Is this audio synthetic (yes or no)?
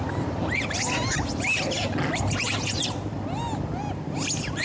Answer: no